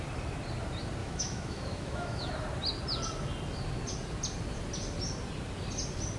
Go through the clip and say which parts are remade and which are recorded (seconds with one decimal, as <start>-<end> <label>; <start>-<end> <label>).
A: 0.0-1.0 recorded; 1.0-2.3 remade; 2.3-6.2 recorded